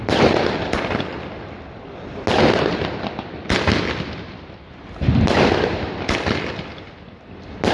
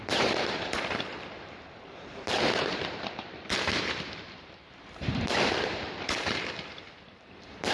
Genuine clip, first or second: first